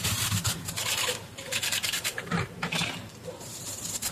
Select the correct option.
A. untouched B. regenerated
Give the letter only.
B